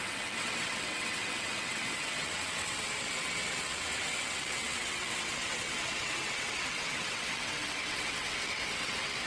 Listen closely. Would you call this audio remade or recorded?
remade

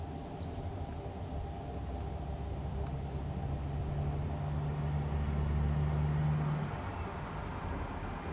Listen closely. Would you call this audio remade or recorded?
recorded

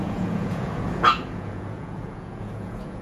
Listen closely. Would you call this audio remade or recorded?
remade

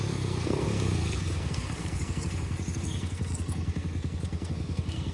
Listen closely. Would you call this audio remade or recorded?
remade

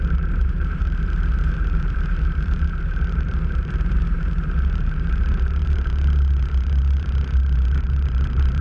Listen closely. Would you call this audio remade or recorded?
remade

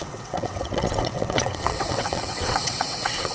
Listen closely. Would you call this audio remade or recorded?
remade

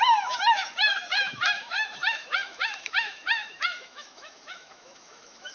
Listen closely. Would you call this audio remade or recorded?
remade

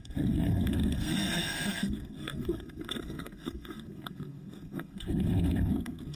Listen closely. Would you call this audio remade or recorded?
remade